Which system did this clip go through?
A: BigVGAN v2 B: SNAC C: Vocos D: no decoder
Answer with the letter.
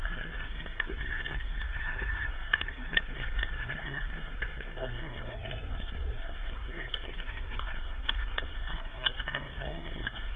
B